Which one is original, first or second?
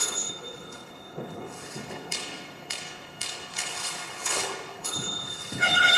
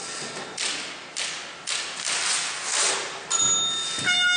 second